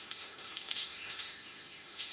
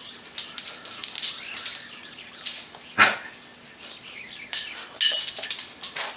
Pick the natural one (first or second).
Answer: second